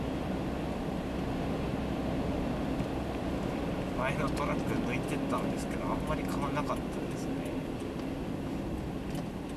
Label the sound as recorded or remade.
recorded